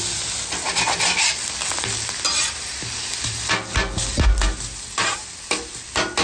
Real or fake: real